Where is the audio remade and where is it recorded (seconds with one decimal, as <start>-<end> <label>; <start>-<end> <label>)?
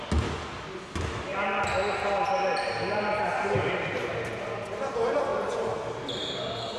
0.0-6.8 recorded